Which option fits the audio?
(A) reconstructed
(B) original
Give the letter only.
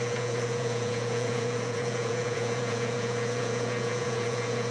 A